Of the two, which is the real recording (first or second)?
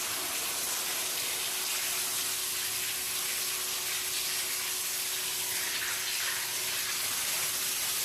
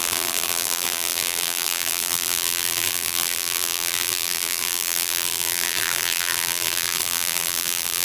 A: first